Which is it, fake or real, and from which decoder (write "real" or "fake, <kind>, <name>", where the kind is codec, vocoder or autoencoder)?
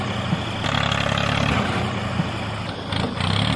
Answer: real